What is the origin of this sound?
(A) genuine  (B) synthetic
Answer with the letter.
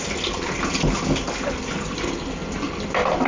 A